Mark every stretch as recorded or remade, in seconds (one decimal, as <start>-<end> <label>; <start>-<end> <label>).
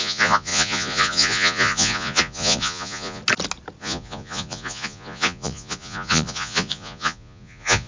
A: 0.0-3.2 remade; 3.2-3.8 recorded; 3.8-7.9 remade